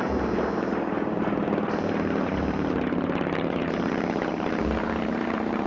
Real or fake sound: fake